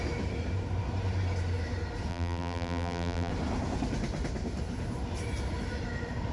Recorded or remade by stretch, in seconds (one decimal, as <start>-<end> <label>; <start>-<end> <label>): 0.0-2.1 recorded; 2.1-3.3 remade; 3.3-6.3 recorded